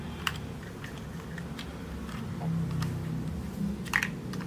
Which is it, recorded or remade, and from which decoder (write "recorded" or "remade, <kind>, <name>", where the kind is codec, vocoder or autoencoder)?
recorded